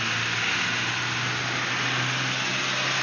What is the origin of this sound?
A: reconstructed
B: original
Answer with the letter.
B